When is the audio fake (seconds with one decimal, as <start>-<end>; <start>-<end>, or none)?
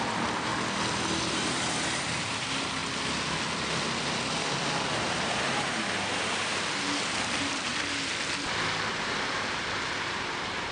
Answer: 0.0-0.5; 1.3-2.8; 4.9-7.7; 8.9-10.7